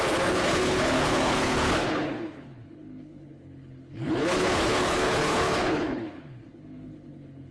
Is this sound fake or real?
fake